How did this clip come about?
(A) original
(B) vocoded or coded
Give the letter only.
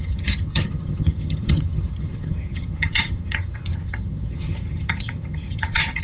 B